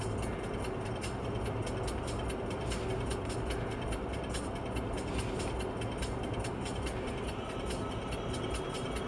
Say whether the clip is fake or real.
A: real